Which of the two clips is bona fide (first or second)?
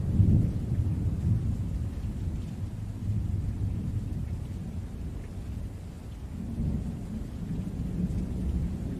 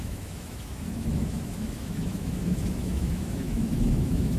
first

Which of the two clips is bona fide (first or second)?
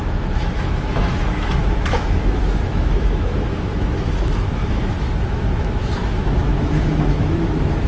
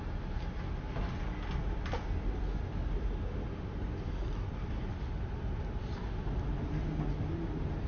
second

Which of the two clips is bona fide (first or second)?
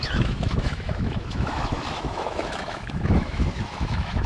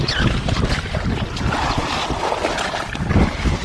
second